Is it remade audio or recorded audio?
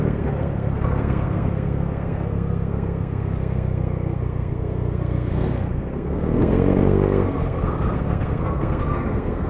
remade